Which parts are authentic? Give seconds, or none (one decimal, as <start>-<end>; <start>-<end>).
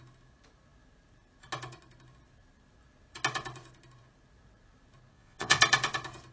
0.0-5.1; 5.6-6.3